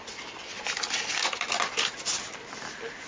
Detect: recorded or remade recorded